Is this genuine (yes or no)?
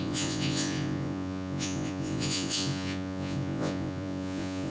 no